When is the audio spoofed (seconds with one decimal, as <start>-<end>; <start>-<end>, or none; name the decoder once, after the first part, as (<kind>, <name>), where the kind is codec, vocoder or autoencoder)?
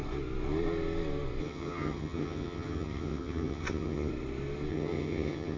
1.4-4.1 (vocoder, HiFi-GAN); 4.7-5.6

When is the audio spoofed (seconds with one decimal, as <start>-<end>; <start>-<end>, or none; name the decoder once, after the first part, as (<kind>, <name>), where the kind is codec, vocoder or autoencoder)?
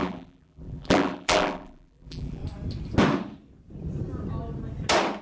0.0-2.4 (vocoder, BigVGAN v2)